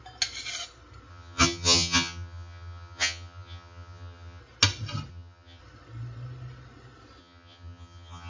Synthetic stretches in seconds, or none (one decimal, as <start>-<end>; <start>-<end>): 1.1-4.4; 5.1-5.6; 7.2-8.3